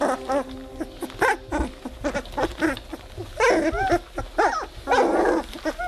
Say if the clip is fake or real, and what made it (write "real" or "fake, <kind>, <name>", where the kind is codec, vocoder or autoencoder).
real